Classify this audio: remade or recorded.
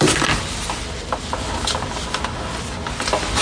recorded